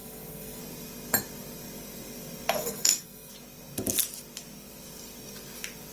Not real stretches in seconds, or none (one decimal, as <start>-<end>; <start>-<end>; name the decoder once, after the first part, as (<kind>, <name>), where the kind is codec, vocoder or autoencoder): 0.0-0.6 (codec, SNAC); 2.6-3.3